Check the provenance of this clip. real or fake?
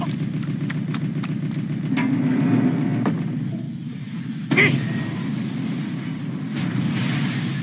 real